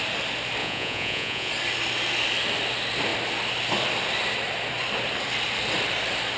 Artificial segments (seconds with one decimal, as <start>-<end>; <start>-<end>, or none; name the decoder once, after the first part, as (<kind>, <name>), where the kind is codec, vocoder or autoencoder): 0.6-1.5 (vocoder, Vocos)